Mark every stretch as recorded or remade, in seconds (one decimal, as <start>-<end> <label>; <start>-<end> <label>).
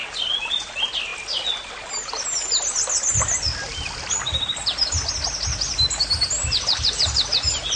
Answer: 0.0-7.8 recorded